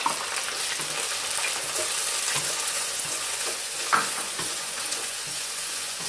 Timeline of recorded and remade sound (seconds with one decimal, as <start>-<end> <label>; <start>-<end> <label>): 0.0-2.3 recorded; 2.3-6.1 remade